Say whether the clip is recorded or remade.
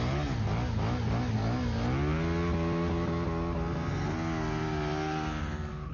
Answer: recorded